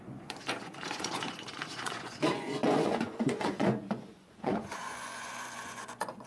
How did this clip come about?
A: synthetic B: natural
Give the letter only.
A